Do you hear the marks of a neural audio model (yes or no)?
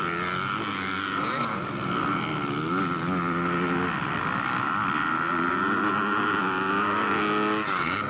no